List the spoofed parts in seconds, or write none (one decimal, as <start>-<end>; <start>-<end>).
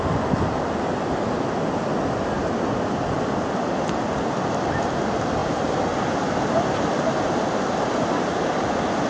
none